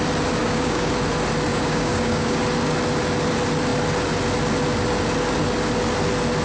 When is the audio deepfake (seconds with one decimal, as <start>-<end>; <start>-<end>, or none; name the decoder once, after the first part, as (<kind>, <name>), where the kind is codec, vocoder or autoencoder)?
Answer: 0.4-0.9 (codec, DAC); 1.5-2.4